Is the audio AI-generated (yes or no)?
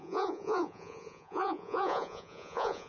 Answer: yes